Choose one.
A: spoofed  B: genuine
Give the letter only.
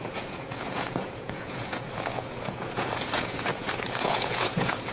A